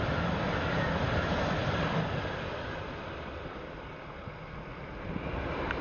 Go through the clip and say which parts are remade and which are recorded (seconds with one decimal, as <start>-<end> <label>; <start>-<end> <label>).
0.0-1.6 recorded; 1.6-5.1 remade; 5.1-5.8 recorded